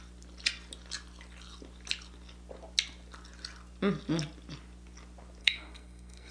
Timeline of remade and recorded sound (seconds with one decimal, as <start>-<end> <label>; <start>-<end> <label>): 0.0-5.4 recorded; 5.4-6.3 remade